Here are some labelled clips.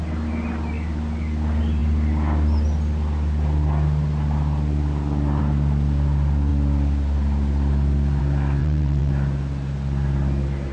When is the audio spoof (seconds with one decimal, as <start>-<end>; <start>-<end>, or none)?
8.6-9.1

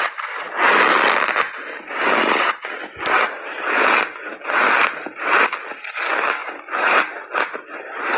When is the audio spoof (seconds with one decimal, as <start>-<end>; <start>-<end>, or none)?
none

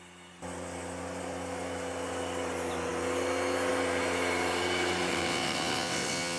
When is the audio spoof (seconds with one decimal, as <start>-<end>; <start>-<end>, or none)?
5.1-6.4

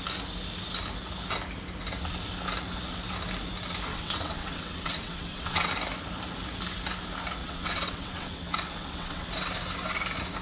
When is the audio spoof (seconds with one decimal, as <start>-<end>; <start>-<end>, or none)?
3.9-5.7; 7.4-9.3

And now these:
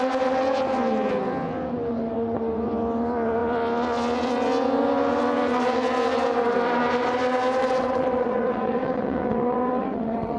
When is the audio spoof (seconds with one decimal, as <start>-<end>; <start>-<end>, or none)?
7.6-10.4

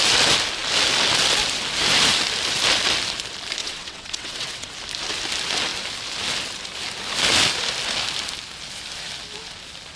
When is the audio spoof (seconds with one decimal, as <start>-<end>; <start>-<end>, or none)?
3.6-4.7